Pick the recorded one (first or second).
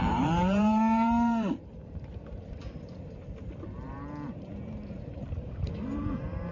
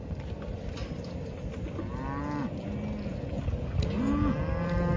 second